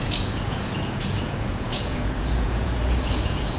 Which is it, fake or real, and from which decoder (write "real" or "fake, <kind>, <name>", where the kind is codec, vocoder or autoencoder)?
fake, vocoder, Vocos